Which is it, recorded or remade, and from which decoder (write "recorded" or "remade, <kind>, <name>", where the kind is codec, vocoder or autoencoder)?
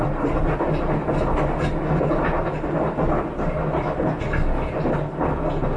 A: recorded